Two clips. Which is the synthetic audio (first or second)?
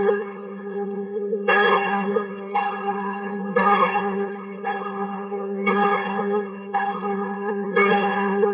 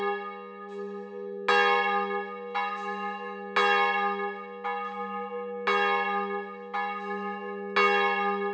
first